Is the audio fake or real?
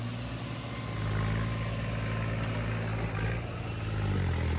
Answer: real